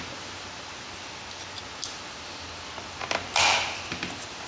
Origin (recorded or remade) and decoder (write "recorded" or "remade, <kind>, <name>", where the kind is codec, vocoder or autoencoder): recorded